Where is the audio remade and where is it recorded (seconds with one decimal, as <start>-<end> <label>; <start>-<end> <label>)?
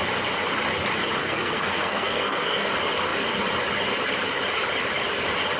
0.0-1.2 recorded; 1.2-2.7 remade; 2.7-5.6 recorded